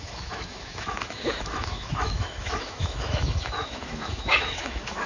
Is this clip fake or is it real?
fake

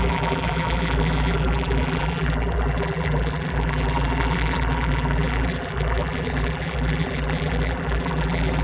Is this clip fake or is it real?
fake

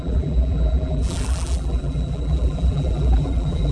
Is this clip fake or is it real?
fake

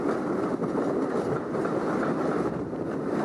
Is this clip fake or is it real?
real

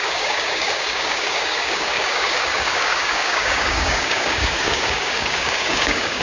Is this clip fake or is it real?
fake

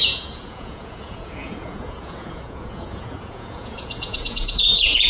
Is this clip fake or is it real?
fake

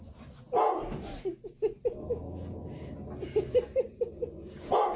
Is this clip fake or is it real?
real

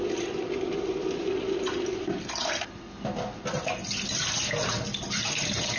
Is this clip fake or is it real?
real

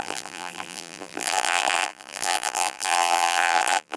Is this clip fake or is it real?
fake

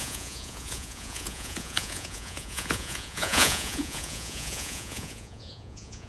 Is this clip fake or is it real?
fake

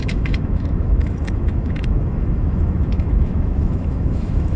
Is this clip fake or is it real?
fake